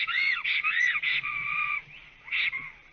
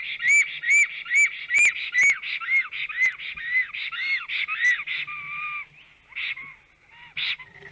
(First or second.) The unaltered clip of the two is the second